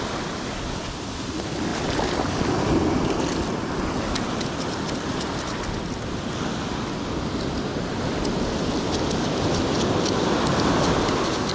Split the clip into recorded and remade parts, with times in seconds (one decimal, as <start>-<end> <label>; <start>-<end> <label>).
0.0-11.5 recorded